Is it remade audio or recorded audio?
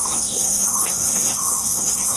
remade